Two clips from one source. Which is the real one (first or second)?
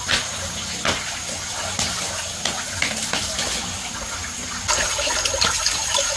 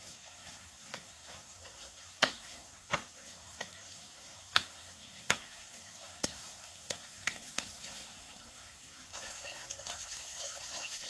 first